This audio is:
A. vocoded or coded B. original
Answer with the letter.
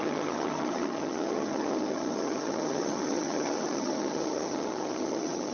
A